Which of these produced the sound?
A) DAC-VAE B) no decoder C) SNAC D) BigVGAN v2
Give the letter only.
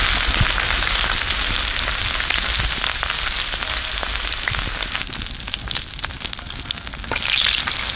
B